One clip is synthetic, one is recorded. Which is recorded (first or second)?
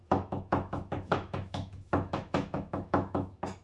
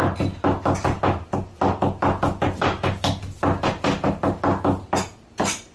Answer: second